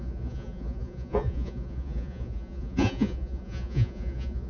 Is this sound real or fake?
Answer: fake